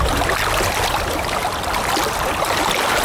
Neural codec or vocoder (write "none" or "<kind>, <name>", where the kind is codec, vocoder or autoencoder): none